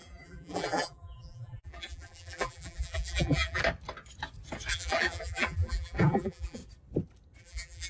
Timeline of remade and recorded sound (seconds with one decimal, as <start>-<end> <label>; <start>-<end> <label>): 0.0-3.6 remade; 3.6-4.7 recorded; 4.7-6.6 remade; 6.6-7.4 recorded; 7.4-7.9 remade